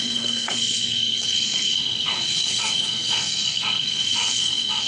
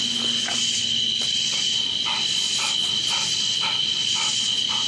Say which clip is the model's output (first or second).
first